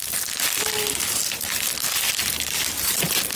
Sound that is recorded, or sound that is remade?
recorded